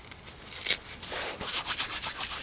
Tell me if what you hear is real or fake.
real